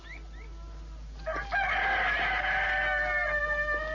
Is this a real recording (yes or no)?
yes